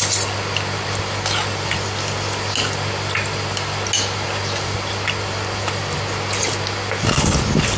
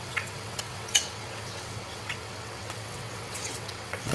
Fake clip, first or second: second